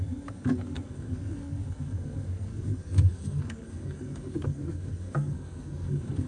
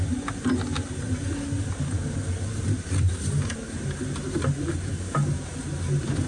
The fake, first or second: first